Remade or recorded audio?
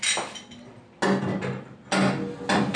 recorded